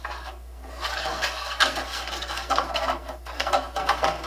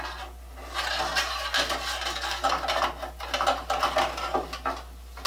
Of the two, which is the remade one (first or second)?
first